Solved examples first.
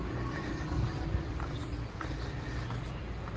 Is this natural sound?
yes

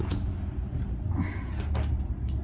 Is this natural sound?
yes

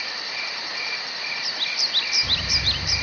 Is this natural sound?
yes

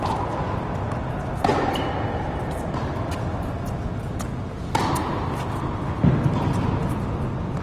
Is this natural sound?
yes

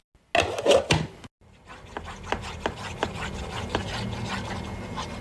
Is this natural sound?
yes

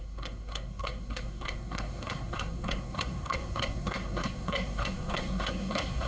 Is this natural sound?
no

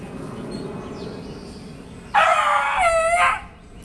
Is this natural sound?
yes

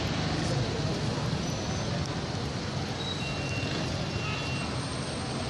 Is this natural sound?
yes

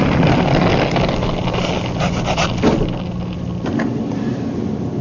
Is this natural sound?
yes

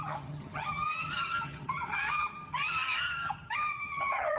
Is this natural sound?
no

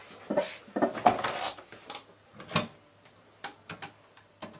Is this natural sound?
yes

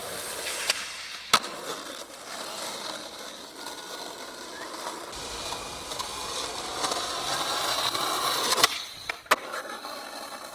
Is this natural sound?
yes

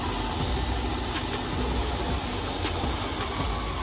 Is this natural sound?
yes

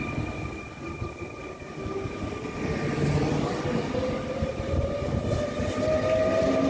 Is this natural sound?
yes